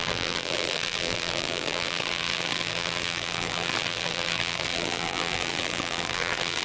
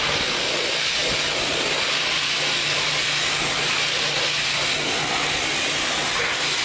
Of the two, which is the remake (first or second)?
first